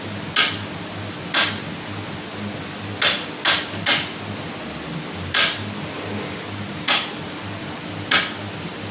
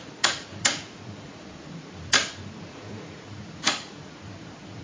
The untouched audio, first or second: first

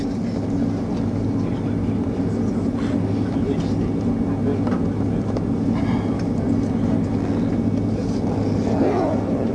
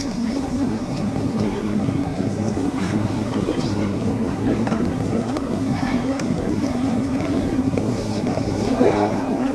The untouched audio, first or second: first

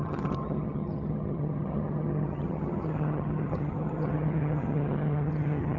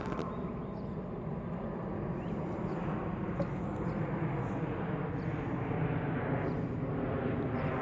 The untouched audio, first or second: second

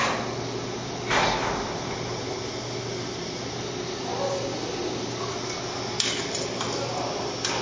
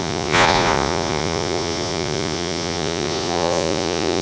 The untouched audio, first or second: first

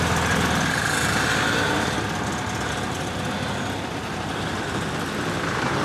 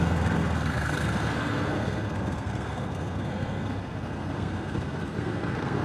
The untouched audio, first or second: first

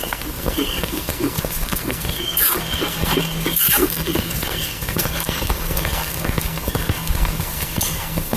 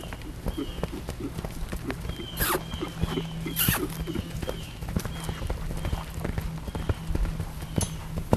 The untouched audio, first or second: second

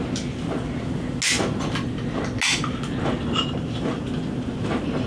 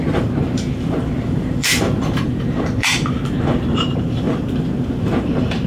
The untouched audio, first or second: first